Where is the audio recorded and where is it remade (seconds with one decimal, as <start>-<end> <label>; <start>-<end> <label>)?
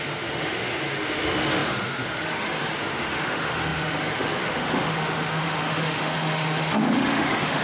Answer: 0.0-7.6 remade